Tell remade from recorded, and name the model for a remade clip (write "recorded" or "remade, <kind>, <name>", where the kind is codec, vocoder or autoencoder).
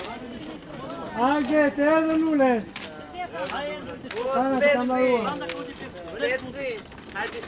recorded